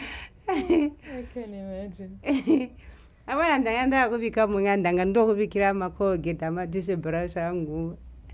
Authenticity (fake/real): real